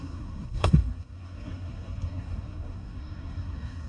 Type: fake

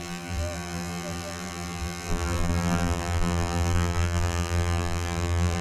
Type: fake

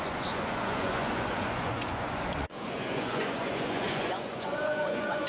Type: fake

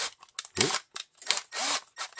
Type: real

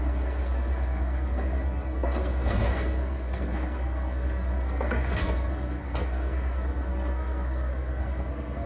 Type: fake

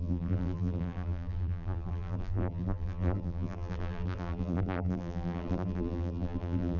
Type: fake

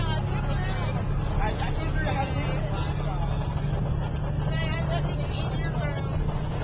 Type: real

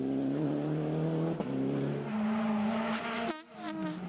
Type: real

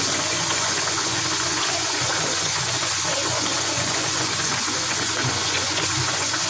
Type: fake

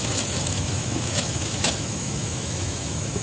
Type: fake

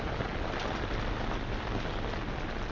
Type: real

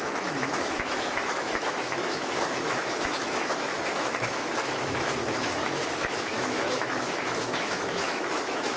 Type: fake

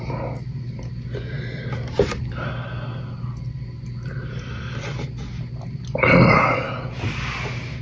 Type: real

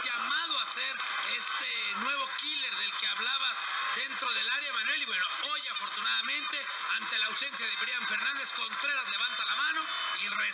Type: real